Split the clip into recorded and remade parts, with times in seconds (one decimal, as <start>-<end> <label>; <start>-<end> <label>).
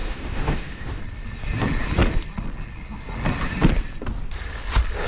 0.0-1.0 remade; 1.0-5.1 recorded